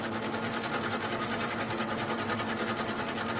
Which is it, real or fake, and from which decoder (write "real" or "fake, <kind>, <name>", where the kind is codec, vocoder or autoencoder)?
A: real